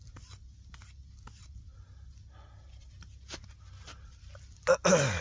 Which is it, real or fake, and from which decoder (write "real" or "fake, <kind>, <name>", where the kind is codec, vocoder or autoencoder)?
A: real